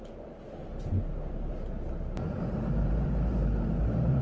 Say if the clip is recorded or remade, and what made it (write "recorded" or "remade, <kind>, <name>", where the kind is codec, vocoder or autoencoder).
remade, vocoder, BigVGAN v2